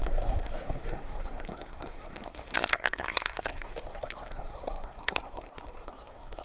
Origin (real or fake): fake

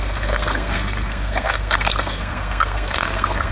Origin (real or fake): fake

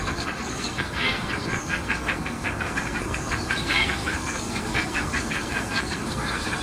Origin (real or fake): fake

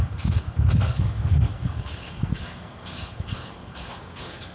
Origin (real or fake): fake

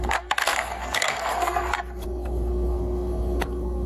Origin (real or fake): fake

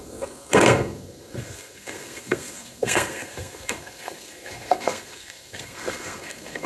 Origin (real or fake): fake